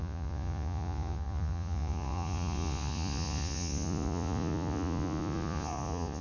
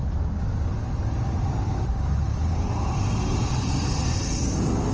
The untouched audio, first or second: second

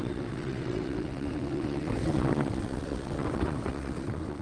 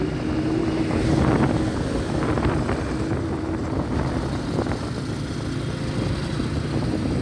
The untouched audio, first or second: second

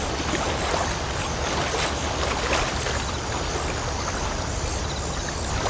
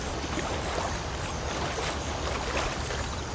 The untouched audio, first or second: first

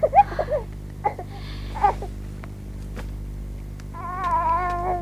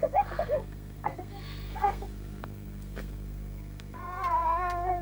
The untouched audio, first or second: first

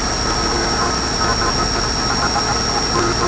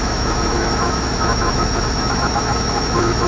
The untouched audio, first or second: first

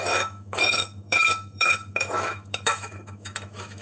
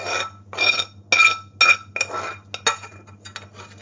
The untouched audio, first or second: second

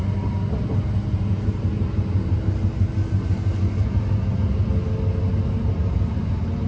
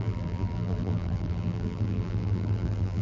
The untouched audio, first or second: first